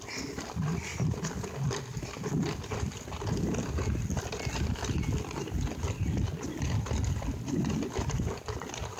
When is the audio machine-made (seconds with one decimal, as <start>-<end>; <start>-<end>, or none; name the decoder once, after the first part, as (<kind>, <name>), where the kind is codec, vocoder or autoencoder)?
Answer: none